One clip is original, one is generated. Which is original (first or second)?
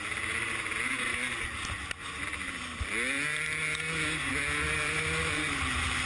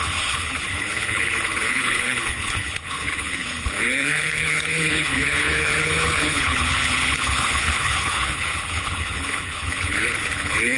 first